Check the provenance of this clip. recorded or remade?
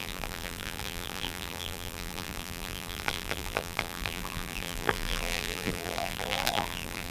remade